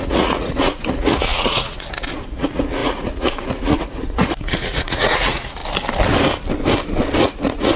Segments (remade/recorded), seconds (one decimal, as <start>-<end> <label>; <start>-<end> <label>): 0.0-5.6 remade; 5.6-7.2 recorded; 7.2-7.8 remade